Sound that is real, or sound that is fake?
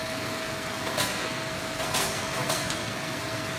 fake